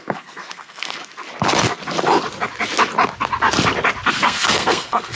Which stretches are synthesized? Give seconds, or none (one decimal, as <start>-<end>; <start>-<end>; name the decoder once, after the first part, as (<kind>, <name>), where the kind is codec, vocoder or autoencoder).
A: 0.0-1.0 (codec, SNAC); 4.1-5.2